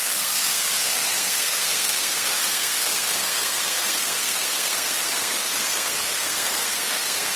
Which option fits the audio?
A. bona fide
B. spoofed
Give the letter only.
B